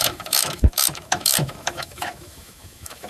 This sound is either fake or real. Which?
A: fake